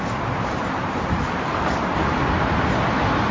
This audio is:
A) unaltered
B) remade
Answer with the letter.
A